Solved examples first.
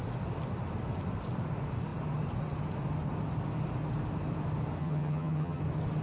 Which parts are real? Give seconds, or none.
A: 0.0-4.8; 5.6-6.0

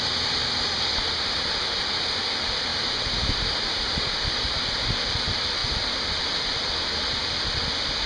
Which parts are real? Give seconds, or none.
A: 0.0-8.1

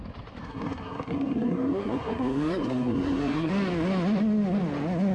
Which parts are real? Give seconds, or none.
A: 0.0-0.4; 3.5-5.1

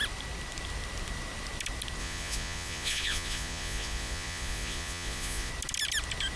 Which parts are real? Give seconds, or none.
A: 0.0-2.0; 5.5-6.4